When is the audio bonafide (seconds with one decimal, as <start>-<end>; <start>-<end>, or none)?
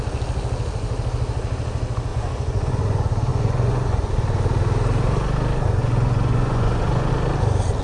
0.0-2.1; 2.8-3.3; 4.1-5.8; 7.1-7.8